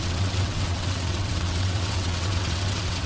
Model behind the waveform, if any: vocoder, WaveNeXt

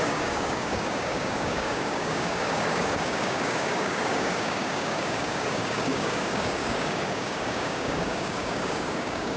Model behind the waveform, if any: codec, DAC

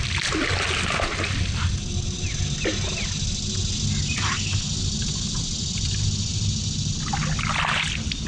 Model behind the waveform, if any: none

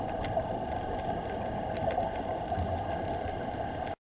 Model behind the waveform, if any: none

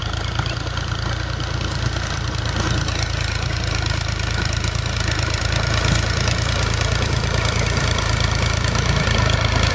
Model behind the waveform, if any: vocoder, BigVGAN v2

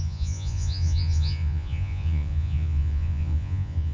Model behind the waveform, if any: vocoder, Vocos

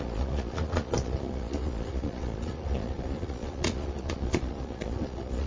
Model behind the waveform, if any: vocoder, Vocos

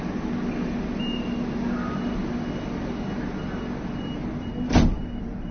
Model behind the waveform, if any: none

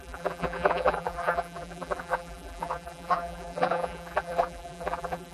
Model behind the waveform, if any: vocoder, BigVGAN v2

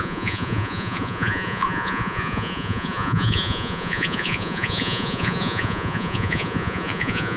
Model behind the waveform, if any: vocoder, Vocos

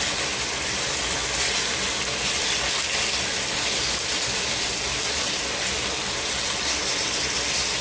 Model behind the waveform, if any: none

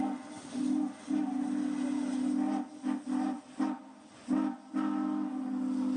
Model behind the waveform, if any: none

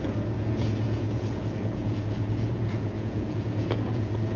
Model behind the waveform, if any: vocoder, Vocos